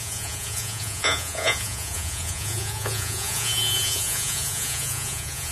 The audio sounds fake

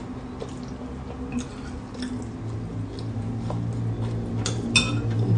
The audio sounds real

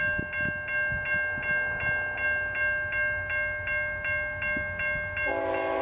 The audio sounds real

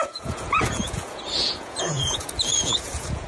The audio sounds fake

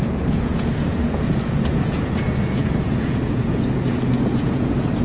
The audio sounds fake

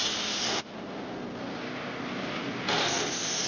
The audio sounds real